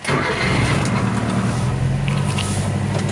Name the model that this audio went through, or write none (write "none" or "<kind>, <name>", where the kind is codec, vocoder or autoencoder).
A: none